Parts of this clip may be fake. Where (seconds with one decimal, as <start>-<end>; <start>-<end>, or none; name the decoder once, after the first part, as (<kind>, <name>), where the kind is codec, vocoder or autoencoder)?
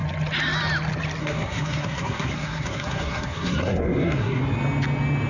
1.2-4.4 (codec, SNAC)